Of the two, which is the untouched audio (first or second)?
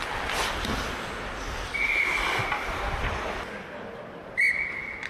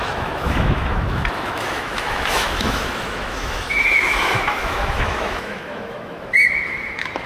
first